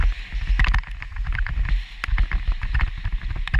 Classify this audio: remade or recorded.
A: recorded